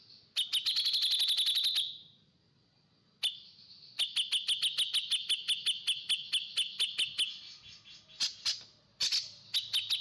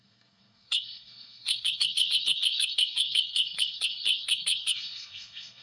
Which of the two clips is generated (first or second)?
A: second